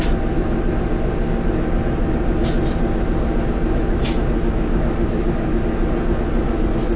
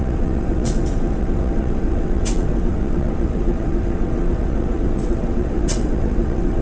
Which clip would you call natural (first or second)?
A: first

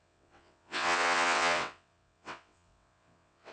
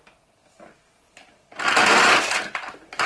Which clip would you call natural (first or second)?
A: second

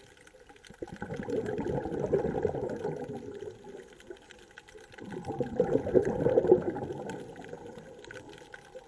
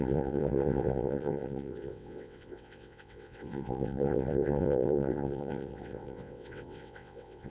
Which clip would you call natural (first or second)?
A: first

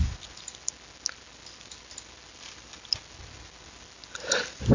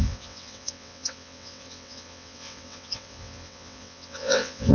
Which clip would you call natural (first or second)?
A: first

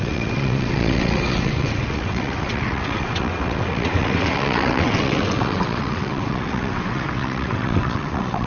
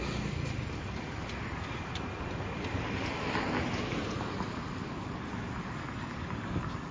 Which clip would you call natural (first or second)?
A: second